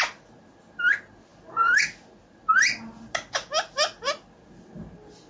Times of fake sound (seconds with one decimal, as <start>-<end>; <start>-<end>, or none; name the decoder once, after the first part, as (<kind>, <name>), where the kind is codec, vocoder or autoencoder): none